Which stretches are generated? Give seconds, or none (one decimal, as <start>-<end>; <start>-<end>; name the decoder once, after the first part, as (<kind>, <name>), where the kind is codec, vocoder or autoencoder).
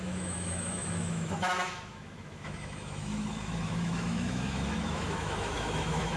0.0-6.2 (autoencoder, DAC-VAE)